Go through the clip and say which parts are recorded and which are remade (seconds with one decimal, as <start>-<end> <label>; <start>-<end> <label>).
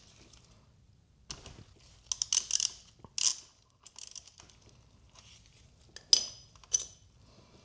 0.0-7.6 recorded